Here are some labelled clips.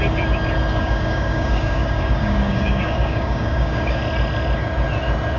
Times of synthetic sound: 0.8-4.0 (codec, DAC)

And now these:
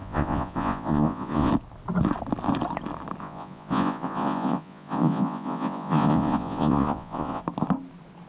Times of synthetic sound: 0.0-1.5 (vocoder, Vocos); 3.2-7.4

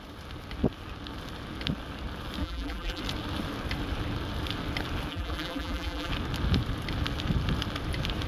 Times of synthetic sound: 2.4-3.0 (vocoder, BigVGAN v2); 5.1-6.1

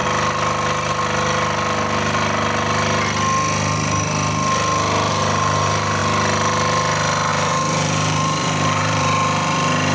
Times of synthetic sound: 5.1-6.0 (vocoder, BigVGAN v2); 7.3-9.9

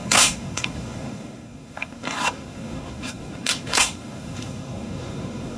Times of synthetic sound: 0.0-5.6 (codec, SNAC)

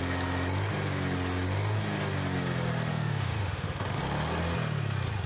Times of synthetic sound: 2.9-4.0 (autoencoder, DAC-VAE)

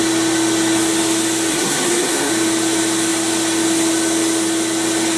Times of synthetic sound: 1.5-2.3 (codec, SNAC)